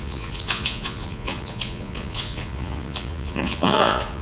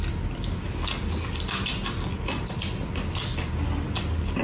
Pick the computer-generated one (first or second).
first